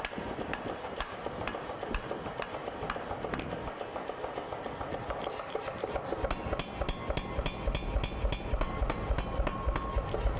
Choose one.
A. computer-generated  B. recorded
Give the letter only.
B